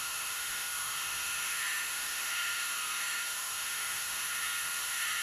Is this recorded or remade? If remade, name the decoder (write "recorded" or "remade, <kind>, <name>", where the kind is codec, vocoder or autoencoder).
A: remade, autoencoder, DAC-VAE